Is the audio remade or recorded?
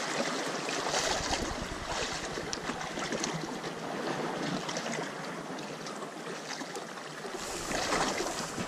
recorded